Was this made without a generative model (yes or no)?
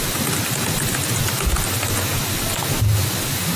yes